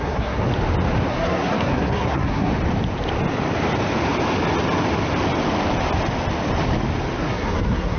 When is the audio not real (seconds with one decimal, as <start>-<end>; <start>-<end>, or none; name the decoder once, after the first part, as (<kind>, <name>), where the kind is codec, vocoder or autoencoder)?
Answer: 0.0-0.5 (codec, SNAC); 1.1-2.5; 7.2-8.0